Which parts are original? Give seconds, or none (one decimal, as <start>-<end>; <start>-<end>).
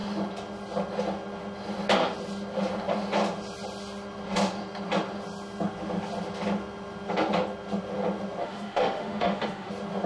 0.0-8.4; 9.7-10.1